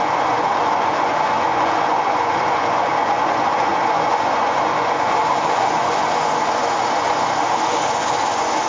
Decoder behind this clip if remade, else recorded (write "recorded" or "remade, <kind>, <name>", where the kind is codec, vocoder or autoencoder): remade, vocoder, Vocos